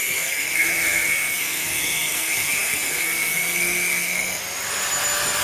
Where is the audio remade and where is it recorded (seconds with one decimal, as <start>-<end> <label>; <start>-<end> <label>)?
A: 0.0-4.4 remade; 4.4-5.4 recorded